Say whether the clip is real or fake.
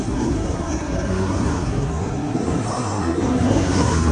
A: fake